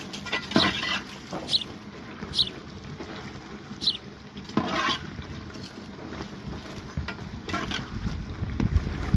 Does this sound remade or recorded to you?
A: recorded